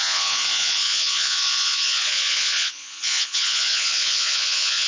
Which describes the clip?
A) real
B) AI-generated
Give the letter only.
B